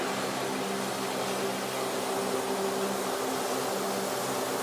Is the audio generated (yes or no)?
no